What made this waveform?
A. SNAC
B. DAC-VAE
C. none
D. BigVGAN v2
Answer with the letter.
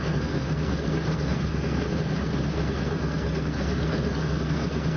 A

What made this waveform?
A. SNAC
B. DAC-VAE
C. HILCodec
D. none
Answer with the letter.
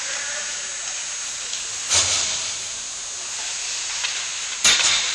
D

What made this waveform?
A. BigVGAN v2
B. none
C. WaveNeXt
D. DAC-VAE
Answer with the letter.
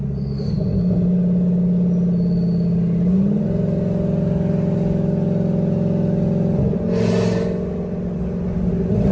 B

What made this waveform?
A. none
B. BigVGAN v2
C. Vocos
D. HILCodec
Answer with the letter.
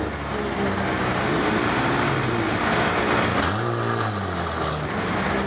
A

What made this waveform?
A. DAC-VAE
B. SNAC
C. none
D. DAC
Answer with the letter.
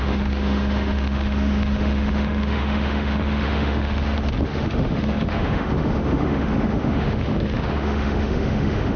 A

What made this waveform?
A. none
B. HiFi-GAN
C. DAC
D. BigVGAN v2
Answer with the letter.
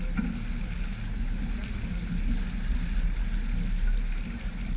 A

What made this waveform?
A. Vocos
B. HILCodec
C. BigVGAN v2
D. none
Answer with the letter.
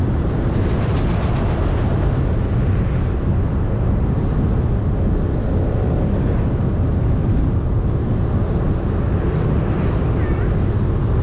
D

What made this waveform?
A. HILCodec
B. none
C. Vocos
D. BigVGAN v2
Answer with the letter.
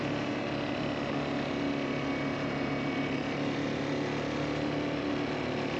B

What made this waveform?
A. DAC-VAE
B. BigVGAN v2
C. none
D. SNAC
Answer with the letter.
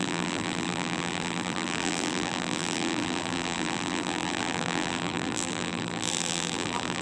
B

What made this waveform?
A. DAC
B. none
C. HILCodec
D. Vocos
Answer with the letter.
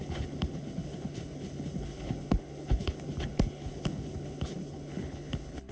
C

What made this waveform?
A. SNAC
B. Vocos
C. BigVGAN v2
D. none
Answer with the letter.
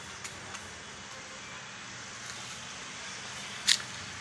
D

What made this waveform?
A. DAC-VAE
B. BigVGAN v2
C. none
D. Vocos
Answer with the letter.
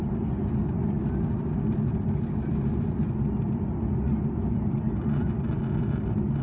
C